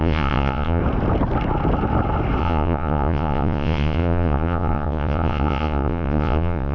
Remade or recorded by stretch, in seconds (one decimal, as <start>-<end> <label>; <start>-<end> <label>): 0.0-0.8 remade; 0.8-2.4 recorded; 2.4-6.7 remade